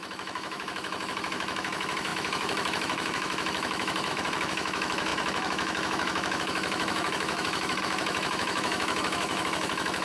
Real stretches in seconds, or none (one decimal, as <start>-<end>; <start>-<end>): none